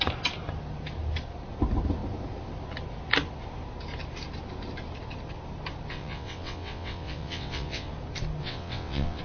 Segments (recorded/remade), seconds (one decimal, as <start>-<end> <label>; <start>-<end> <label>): 0.0-5.9 recorded; 5.9-7.9 remade; 7.9-8.4 recorded; 8.4-9.2 remade